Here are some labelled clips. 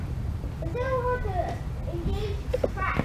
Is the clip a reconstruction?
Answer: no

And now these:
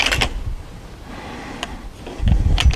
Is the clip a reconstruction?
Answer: no